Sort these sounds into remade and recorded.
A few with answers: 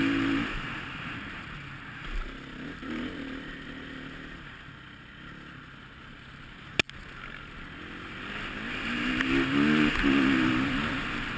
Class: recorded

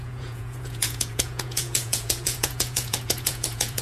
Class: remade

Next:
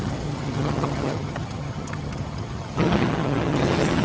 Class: remade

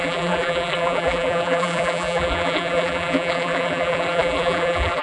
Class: remade